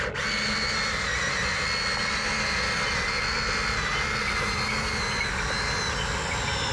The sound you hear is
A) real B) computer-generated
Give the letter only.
A